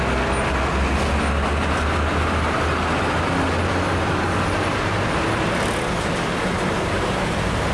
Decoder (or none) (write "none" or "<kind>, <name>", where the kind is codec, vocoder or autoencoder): none